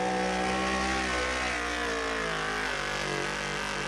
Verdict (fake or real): real